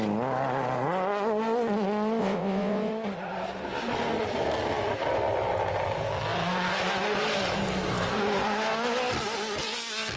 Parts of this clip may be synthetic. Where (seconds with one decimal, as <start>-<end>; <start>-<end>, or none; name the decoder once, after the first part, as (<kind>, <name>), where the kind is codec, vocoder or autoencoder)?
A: 2.2-2.9 (vocoder, WaveNeXt)